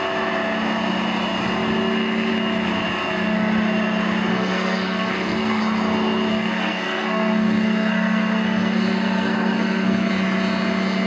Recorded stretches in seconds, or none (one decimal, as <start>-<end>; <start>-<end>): 0.0-4.3; 5.6-6.3; 10.1-11.1

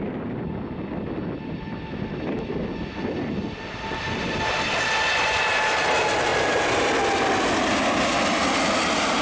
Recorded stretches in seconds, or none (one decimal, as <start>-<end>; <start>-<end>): 0.0-9.2

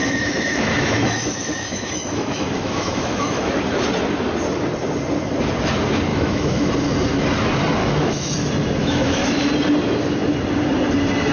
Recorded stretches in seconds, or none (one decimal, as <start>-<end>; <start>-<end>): 3.5-6.1; 6.7-7.8; 8.3-8.8; 9.5-11.3